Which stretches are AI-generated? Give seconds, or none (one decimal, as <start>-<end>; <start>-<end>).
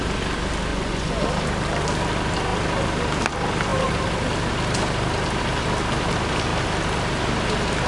0.7-1.2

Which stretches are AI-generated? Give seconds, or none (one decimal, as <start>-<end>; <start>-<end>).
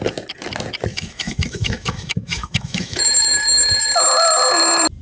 0.9-3.9